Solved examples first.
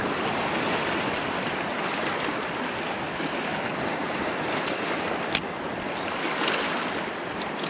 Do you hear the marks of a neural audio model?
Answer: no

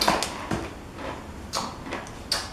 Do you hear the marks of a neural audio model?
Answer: no